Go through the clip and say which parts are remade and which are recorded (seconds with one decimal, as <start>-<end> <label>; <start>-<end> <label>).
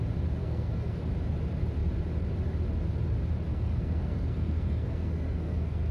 0.0-0.4 recorded; 0.4-1.0 remade; 1.0-3.5 recorded; 3.5-5.9 remade